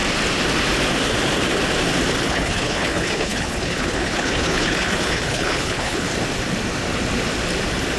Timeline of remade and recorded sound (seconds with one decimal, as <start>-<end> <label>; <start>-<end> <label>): 0.0-2.2 recorded; 2.2-6.1 remade; 6.1-8.0 recorded